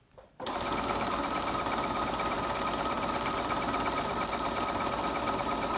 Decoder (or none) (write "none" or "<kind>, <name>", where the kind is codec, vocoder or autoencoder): vocoder, BigVGAN v2